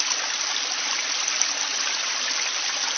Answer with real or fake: real